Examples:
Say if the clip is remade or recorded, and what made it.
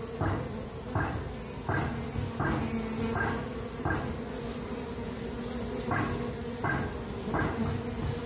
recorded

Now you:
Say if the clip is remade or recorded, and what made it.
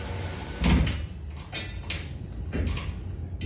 recorded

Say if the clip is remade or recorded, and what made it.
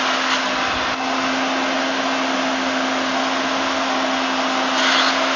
recorded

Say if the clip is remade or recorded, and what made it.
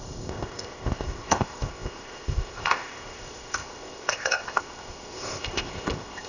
remade, codec, ZipCodec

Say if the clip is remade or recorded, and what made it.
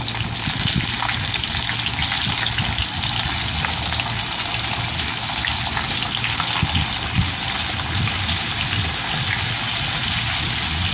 recorded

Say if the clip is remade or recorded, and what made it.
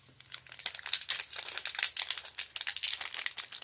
recorded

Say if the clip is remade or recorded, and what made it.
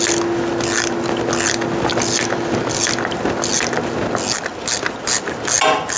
recorded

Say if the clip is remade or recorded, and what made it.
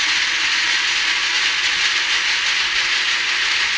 recorded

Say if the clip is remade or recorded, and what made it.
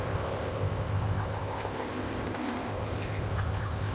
remade, codec, ZipCodec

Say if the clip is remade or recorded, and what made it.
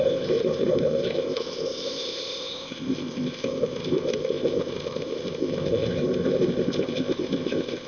remade, codec, ZipCodec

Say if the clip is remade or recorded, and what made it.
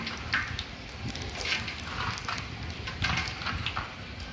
recorded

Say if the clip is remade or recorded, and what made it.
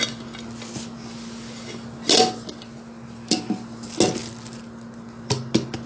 recorded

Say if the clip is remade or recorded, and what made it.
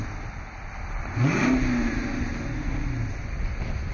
recorded